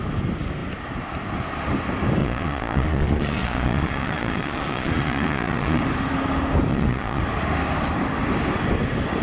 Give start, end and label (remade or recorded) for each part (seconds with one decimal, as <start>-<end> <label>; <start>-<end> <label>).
0.0-2.2 recorded; 2.2-5.8 remade; 5.8-6.7 recorded; 6.7-7.2 remade; 7.2-9.2 recorded